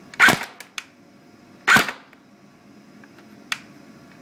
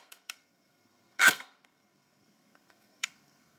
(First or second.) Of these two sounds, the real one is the first